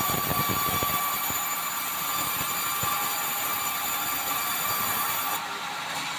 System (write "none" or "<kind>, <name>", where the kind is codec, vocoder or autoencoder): none